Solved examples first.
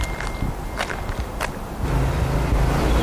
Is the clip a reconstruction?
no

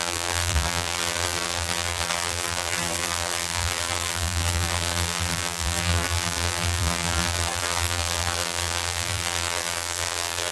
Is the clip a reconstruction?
yes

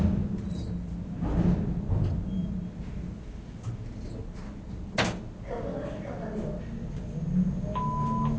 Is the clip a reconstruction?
no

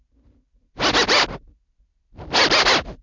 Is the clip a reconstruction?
no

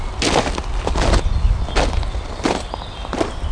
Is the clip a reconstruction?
no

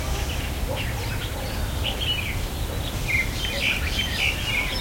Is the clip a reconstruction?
no